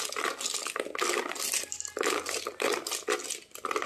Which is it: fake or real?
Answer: real